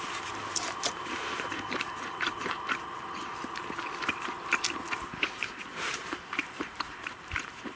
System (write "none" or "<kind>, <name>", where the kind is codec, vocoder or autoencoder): vocoder, BigVGAN v2